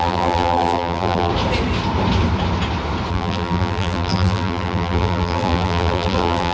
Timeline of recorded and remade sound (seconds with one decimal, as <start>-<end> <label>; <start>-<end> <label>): 0.0-1.3 remade; 1.3-3.1 recorded; 3.1-6.5 remade